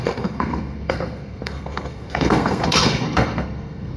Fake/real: fake